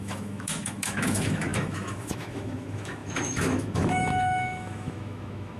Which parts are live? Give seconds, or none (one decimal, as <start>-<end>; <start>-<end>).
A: none